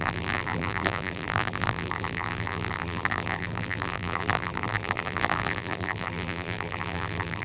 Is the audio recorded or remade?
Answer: remade